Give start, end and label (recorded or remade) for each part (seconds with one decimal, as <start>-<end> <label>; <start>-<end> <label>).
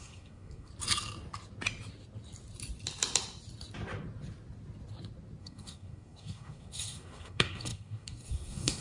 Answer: 0.0-0.7 remade; 0.7-5.4 recorded; 5.4-8.8 remade